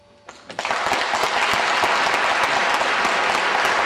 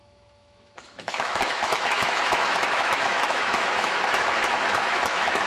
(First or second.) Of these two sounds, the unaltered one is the first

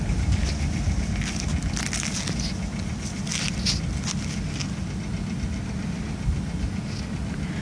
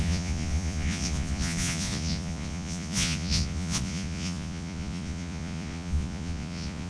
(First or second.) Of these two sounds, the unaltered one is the first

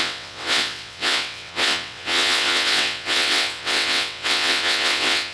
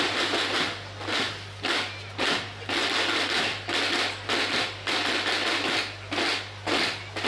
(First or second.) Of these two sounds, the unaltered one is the second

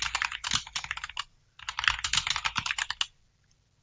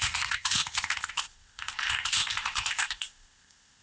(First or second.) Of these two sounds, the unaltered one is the first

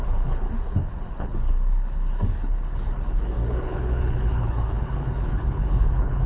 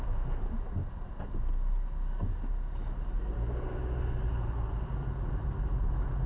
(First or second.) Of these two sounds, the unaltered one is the second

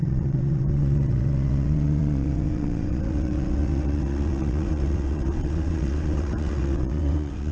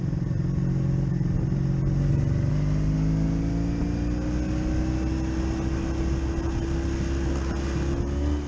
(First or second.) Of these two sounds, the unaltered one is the second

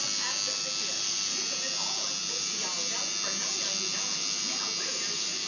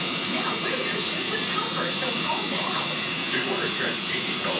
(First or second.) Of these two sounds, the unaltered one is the first